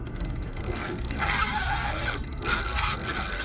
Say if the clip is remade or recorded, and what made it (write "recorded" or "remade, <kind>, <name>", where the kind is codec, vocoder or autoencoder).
remade, codec, SNAC